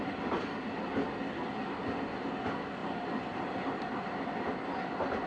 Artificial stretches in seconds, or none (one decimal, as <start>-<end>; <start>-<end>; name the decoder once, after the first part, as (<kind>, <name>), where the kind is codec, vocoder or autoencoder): 1.6-2.3 (vocoder, BigVGAN v2); 2.8-4.2